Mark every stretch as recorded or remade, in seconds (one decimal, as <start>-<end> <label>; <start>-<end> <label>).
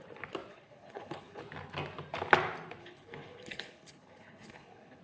0.0-0.5 recorded; 0.5-1.4 remade; 1.4-2.8 recorded; 2.8-5.0 remade